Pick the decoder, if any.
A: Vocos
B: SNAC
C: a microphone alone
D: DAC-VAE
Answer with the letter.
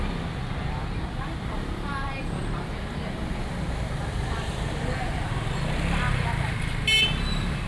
C